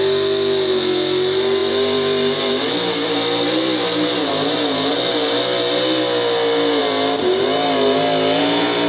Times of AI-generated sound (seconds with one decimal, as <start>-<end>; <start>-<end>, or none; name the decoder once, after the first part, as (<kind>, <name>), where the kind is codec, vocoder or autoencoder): 1.6-4.1 (vocoder, BigVGAN v2)

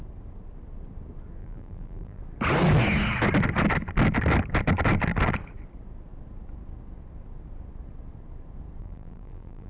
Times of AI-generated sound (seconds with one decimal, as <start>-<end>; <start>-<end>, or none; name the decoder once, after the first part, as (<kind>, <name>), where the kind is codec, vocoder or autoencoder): 1.4-2.2 (vocoder, BigVGAN v2); 8.8-9.7

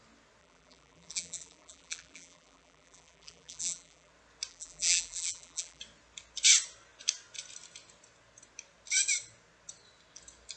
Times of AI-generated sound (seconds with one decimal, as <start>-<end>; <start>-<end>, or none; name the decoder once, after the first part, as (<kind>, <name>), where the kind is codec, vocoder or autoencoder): 0.4-4.1 (vocoder, BigVGAN v2); 4.5-5.8

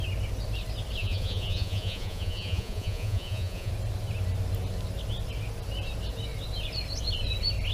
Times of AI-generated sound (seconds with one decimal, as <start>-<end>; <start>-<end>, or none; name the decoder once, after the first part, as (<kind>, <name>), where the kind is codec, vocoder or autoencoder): 1.0-3.7 (vocoder, Vocos)

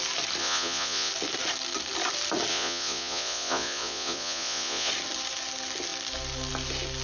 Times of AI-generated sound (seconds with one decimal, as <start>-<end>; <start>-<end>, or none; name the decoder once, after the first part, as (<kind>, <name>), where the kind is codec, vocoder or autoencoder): 0.4-1.1 (vocoder, Vocos); 2.5-4.9

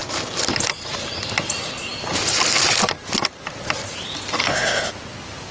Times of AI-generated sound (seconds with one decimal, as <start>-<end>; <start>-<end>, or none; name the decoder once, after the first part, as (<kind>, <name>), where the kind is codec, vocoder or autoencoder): 4.4-4.9 (codec, ZipCodec)

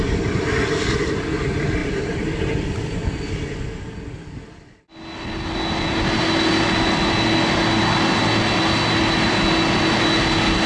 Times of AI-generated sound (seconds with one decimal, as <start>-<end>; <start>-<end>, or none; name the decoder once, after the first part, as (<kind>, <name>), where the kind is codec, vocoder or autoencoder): 1.8-2.4 (vocoder, BigVGAN v2)